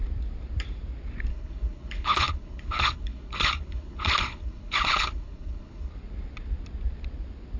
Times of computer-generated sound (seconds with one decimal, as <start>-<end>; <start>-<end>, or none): 1.3-5.9